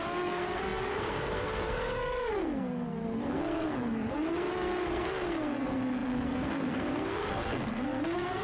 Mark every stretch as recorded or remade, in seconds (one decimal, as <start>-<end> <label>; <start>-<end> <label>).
0.0-8.4 remade